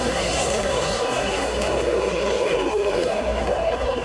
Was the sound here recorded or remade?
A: remade